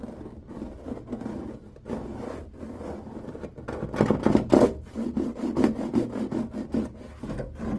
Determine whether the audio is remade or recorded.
recorded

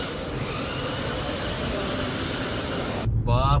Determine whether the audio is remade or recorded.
remade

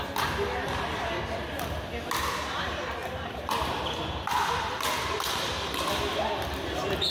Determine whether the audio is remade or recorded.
recorded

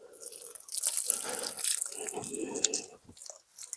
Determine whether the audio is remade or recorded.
recorded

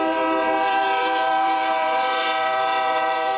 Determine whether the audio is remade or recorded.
remade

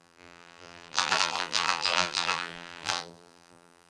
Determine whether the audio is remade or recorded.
remade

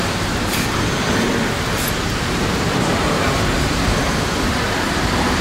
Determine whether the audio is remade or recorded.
remade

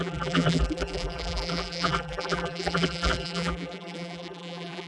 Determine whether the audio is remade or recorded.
remade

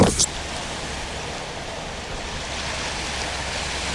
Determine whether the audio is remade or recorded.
remade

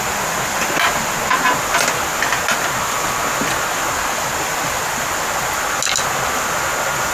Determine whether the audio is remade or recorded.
recorded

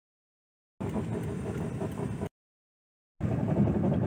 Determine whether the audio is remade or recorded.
recorded